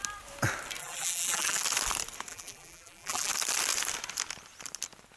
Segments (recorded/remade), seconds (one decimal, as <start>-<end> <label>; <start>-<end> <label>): 0.0-0.8 recorded; 0.8-1.6 remade; 1.6-2.3 recorded; 2.3-3.3 remade; 3.3-5.2 recorded